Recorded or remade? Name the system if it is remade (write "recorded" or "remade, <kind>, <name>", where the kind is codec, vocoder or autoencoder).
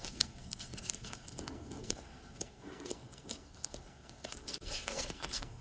remade, codec, SNAC